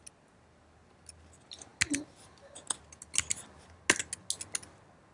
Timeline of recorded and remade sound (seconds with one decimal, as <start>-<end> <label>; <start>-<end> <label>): 0.0-5.1 recorded